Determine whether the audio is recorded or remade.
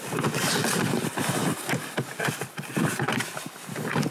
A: recorded